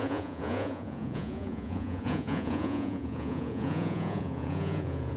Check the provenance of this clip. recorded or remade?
remade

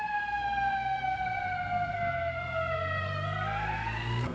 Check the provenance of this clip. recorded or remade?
remade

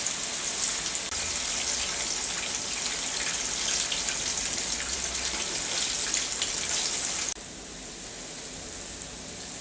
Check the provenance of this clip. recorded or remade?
recorded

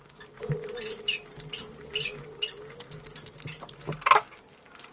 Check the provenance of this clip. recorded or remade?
recorded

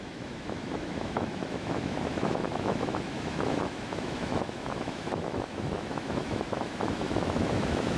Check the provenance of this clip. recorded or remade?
remade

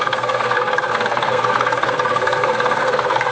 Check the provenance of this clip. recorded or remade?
remade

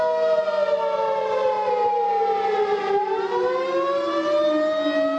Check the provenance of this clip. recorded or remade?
recorded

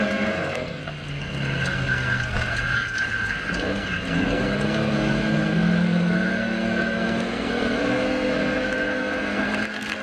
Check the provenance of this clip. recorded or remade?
remade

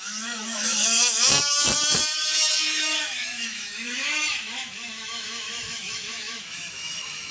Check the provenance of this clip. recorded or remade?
remade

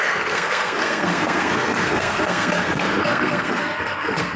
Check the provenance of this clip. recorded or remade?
remade